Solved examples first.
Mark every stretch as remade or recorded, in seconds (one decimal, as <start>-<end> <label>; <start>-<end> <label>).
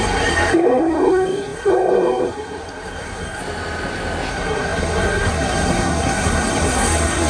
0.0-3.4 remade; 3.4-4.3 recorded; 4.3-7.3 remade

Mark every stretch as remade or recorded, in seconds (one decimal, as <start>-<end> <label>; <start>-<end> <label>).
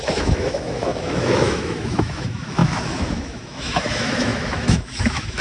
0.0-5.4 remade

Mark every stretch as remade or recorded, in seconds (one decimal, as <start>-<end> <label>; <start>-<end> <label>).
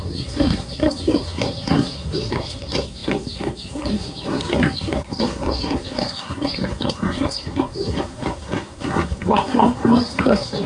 0.0-10.7 remade